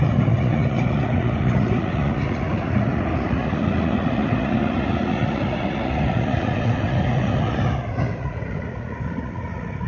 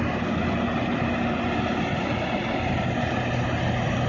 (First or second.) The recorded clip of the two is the second